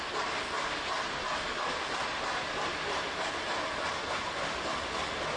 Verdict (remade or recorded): recorded